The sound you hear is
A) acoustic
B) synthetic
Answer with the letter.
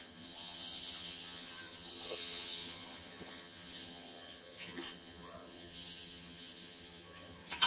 B